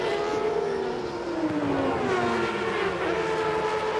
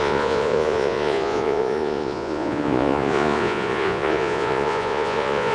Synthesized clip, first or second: second